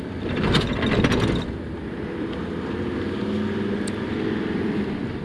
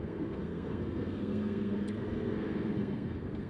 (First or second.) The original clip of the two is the first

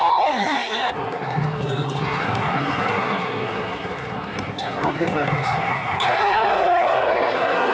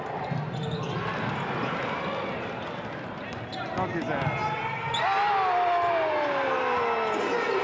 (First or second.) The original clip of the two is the second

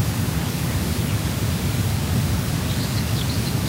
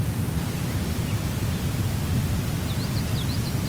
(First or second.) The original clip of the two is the second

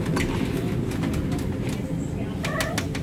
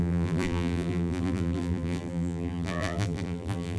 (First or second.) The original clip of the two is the first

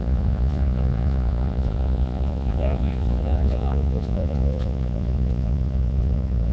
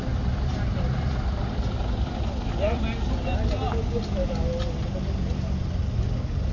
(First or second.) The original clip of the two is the second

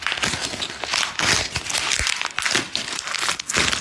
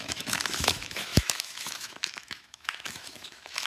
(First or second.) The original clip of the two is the first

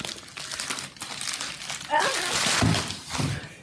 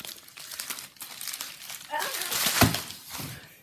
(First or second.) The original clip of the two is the first